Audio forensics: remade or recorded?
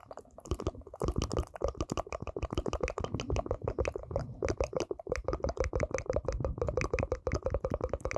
recorded